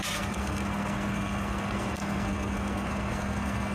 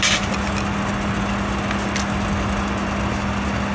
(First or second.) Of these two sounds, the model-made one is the first